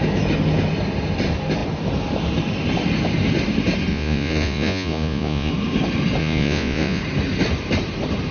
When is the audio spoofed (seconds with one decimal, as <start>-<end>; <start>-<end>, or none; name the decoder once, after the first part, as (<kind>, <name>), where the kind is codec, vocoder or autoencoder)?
3.9-5.5 (vocoder, Vocos); 6.2-7.0